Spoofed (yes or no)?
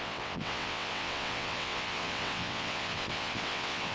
yes